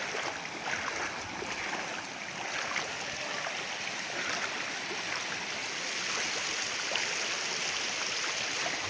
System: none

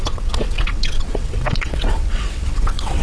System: vocoder, WaveNeXt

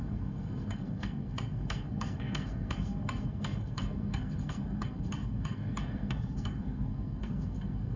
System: codec, SNAC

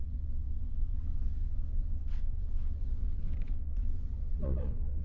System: vocoder, WaveNeXt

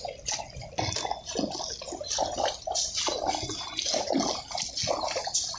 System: none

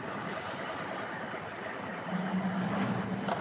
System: none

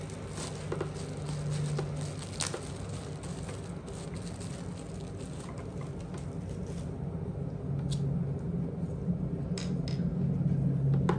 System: none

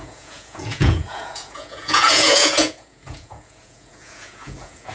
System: vocoder, Vocos